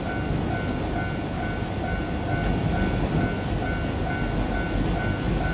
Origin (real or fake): real